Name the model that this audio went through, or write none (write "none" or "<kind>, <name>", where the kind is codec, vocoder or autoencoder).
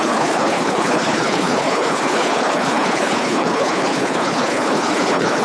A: codec, HILCodec